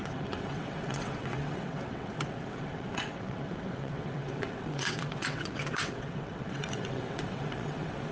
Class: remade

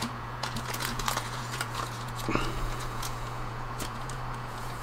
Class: remade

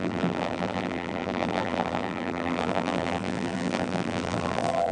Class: remade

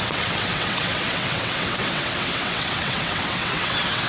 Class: remade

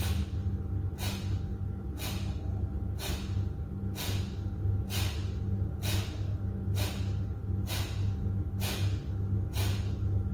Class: recorded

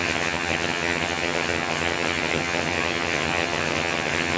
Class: remade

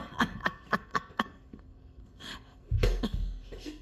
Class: remade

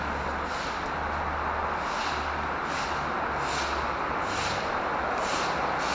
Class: recorded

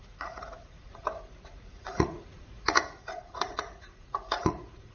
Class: remade